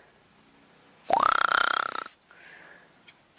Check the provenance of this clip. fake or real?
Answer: real